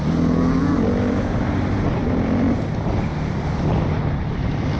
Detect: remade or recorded recorded